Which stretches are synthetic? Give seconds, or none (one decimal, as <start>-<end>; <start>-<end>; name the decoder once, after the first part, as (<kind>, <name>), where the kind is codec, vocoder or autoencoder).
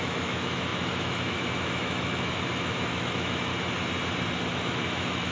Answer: 0.0-3.5 (autoencoder, DAC-VAE); 4.5-5.3